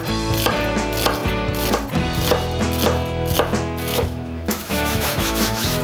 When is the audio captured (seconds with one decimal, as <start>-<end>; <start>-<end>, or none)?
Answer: 0.0-3.9